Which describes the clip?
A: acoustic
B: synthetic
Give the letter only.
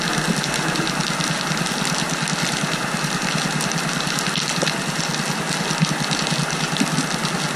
A